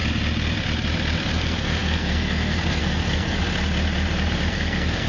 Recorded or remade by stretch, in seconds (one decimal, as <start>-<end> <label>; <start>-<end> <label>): 0.0-1.4 recorded; 1.4-3.4 remade; 3.4-4.5 recorded; 4.5-5.1 remade